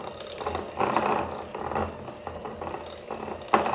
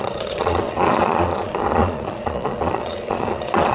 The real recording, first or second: first